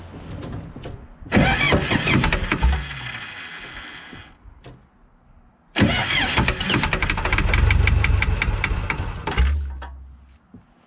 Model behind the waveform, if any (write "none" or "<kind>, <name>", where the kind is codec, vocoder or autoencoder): none